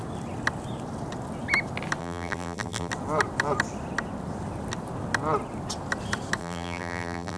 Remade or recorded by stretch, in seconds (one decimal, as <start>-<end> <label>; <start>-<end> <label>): 0.0-2.0 recorded; 2.0-2.9 remade; 2.9-6.4 recorded; 6.4-7.4 remade